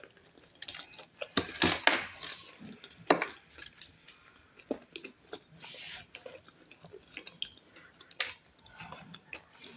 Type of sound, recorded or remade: recorded